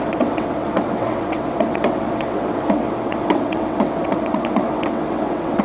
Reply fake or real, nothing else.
fake